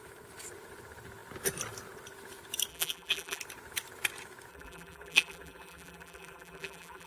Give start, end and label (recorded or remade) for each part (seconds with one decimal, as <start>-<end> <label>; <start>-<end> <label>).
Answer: 0.0-2.7 recorded; 2.7-3.4 remade; 3.4-4.5 recorded; 4.5-7.1 remade